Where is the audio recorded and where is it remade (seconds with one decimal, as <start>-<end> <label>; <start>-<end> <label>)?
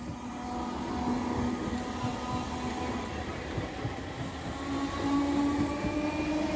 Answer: 0.0-6.6 recorded